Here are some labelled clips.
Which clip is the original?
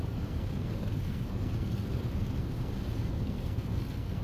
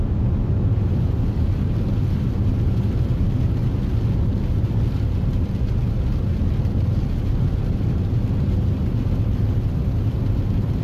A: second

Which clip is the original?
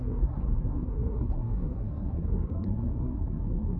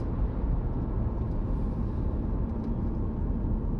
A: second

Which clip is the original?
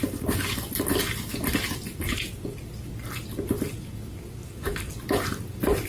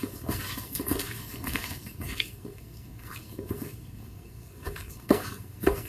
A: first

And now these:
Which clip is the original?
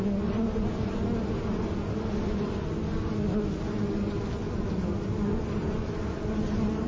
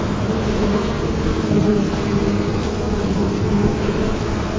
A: first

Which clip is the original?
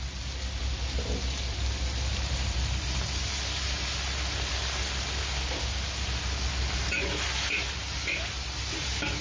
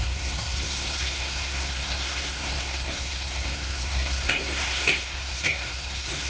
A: first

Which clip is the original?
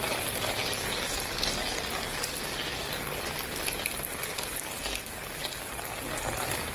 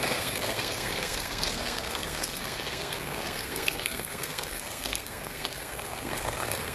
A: first